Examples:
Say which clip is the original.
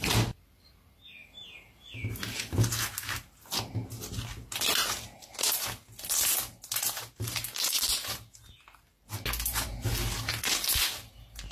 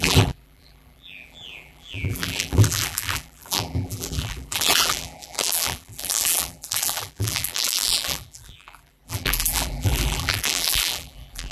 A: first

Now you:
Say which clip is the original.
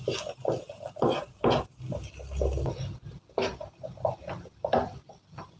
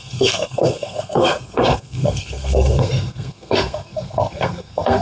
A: first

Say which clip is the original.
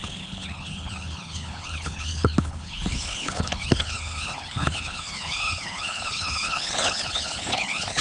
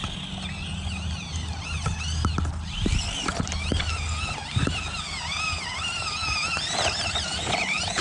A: second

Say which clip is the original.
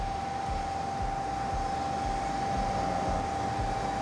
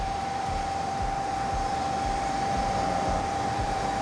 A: first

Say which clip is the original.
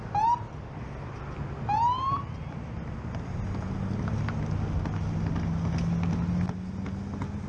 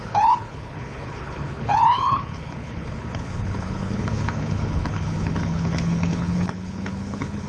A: first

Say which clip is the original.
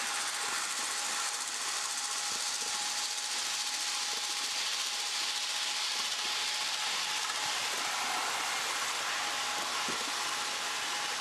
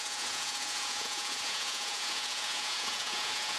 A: first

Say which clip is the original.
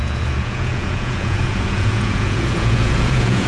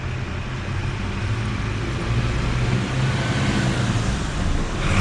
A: second